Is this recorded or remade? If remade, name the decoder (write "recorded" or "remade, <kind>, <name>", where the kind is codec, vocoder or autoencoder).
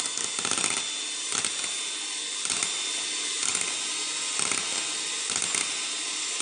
recorded